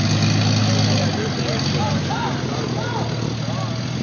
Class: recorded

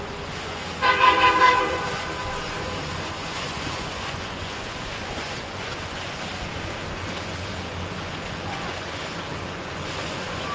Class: remade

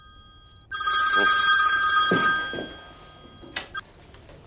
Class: recorded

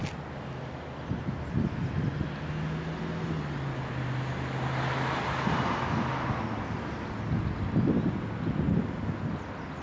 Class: recorded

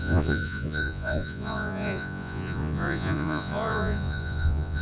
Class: remade